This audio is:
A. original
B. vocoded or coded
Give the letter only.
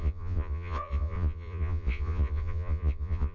B